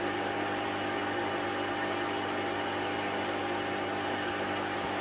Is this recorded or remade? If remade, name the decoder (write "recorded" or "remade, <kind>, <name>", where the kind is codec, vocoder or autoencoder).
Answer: recorded